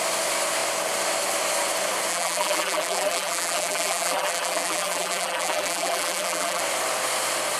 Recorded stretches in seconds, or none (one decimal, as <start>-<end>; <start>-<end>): 0.0-2.1; 6.6-7.6